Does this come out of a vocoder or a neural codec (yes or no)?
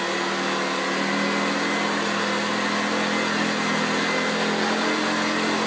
no